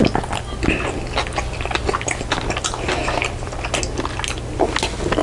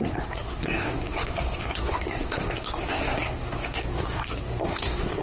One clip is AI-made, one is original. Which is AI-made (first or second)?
second